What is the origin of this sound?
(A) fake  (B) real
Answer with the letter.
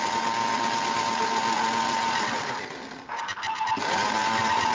B